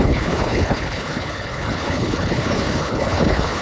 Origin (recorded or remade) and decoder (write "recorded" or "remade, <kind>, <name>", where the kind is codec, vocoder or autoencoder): remade, codec, HILCodec